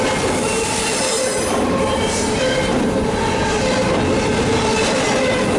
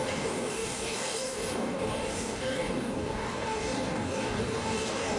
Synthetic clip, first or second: second